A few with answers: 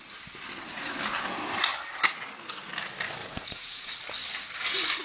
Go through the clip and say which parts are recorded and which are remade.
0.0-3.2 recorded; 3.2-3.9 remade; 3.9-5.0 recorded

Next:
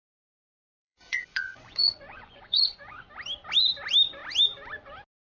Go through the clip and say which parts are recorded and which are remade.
0.0-3.1 remade; 3.1-5.2 recorded

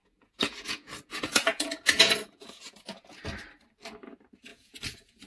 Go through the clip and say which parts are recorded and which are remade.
0.0-3.2 remade; 3.2-4.5 recorded; 4.5-5.3 remade

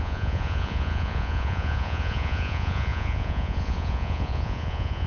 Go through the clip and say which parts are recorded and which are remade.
0.0-5.1 remade

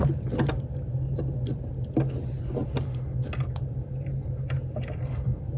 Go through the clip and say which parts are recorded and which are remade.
0.0-5.6 recorded